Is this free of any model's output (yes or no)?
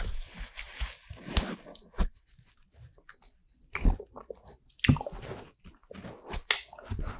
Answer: yes